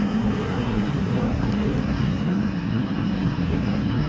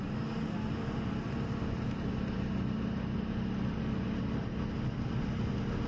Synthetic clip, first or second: first